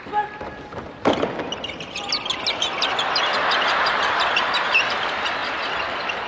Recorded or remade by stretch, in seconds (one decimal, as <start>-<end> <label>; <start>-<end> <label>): 0.0-6.3 recorded

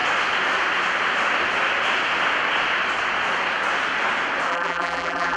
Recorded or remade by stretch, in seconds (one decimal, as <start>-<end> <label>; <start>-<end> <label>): 0.0-4.5 recorded; 4.5-5.4 remade

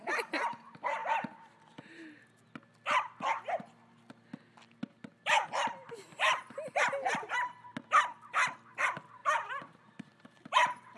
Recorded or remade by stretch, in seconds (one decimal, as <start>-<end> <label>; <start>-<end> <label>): 0.0-9.2 recorded; 9.2-11.0 remade